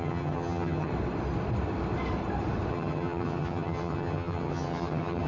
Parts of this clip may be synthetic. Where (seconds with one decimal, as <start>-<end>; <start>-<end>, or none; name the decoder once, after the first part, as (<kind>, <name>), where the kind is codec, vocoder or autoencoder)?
0.0-0.9 (vocoder, HiFi-GAN); 2.7-5.3